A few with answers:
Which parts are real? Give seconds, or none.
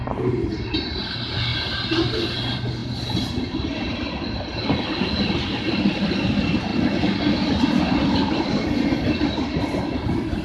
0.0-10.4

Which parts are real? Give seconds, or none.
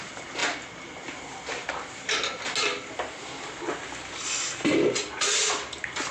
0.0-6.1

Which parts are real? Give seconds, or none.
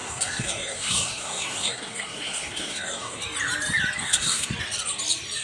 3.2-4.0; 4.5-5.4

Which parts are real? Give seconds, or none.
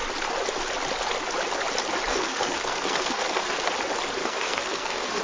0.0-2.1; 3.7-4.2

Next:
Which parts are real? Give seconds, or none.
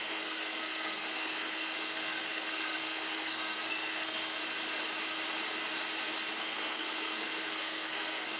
4.4-6.4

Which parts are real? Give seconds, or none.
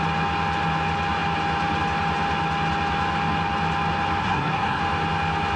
0.0-4.2; 4.8-5.6